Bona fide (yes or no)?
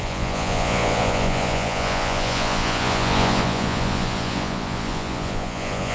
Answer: no